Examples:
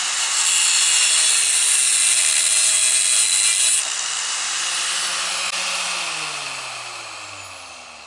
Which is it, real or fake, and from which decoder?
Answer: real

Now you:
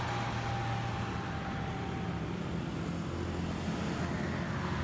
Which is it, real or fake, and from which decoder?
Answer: real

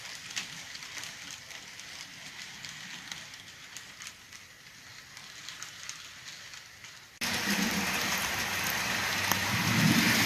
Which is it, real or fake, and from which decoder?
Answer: real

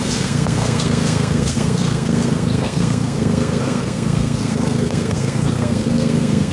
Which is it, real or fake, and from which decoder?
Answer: fake, codec, SNAC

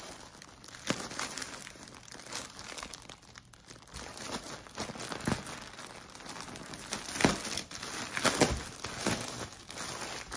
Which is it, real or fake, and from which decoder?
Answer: real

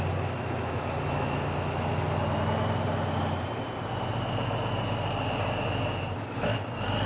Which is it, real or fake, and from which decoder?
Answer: real